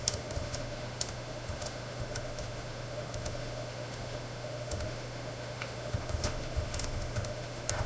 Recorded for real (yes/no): no